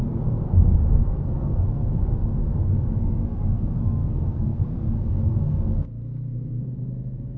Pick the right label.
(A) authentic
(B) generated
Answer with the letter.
B